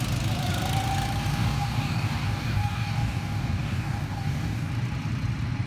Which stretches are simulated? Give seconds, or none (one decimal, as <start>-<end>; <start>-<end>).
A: 1.3-4.7